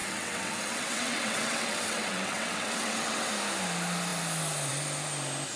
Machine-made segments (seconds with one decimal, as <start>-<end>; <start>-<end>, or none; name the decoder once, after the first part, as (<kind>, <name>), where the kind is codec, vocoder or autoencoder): 0.0-3.3 (vocoder, WaveNeXt)